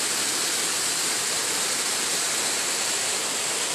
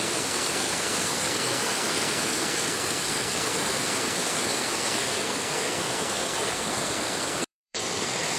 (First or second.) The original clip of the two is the first